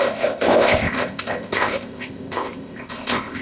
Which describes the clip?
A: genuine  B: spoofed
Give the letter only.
B